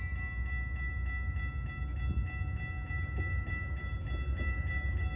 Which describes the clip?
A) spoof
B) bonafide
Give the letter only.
B